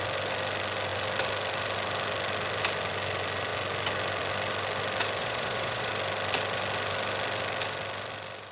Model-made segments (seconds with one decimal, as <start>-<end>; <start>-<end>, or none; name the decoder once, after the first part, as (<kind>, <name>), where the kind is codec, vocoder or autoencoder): 5.2-5.9 (vocoder, Vocos)